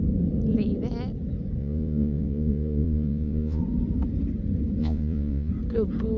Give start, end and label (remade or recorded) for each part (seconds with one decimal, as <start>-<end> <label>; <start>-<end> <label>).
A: 0.0-1.6 recorded; 1.6-3.6 remade; 3.6-4.8 recorded; 4.8-5.5 remade; 5.5-6.2 recorded